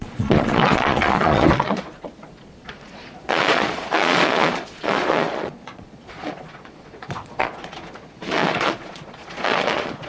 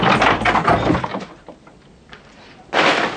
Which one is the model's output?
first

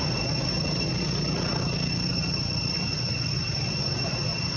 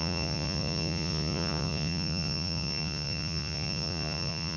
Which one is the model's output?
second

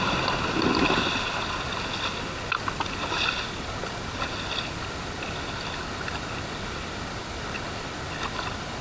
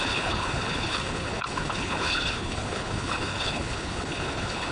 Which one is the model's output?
second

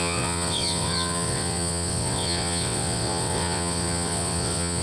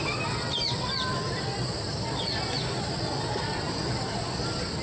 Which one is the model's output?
first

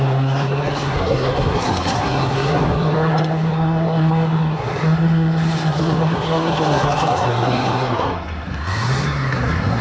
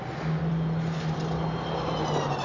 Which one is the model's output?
first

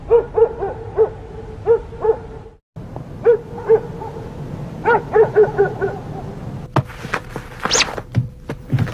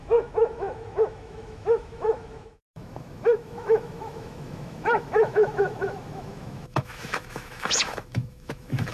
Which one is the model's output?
second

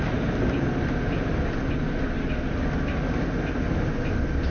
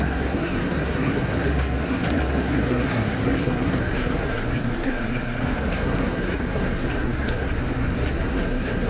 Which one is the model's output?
second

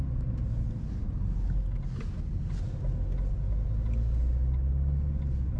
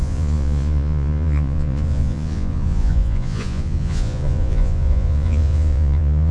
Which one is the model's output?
second